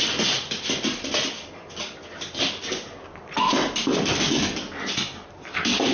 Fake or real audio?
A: real